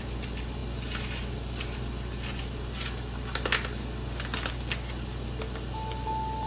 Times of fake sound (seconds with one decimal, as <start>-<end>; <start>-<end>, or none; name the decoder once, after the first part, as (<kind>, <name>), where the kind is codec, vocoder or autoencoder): none